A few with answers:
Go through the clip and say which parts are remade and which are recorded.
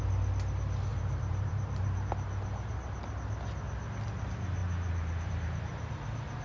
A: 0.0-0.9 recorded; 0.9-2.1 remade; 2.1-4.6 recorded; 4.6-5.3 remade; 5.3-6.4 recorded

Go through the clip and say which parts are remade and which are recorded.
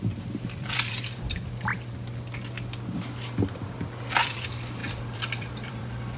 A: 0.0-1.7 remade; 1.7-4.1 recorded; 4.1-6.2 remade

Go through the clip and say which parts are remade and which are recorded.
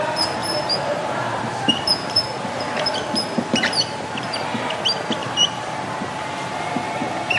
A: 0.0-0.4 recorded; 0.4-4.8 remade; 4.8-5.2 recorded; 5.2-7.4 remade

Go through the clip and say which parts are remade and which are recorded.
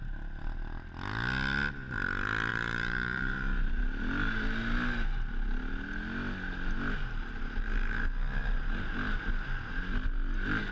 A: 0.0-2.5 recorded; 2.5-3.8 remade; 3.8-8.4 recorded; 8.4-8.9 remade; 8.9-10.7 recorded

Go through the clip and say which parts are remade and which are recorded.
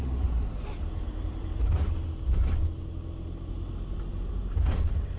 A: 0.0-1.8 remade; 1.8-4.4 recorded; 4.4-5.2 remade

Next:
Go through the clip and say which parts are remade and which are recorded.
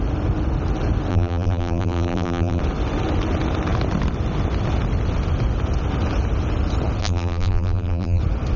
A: 0.0-1.1 recorded; 1.1-2.6 remade; 2.6-7.0 recorded; 7.0-8.2 remade; 8.2-8.6 recorded